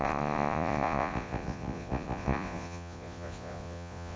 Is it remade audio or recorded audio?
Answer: remade